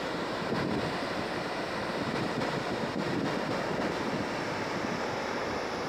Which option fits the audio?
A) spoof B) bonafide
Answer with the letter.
B